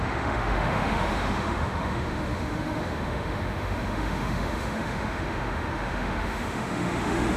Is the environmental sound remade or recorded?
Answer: remade